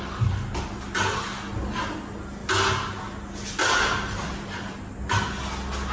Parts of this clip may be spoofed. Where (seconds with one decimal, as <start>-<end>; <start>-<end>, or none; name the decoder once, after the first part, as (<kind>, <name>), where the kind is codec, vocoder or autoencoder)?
none